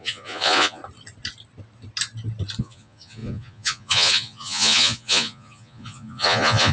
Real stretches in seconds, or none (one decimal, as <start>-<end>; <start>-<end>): 0.8-2.6